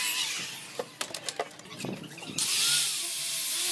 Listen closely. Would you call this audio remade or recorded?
recorded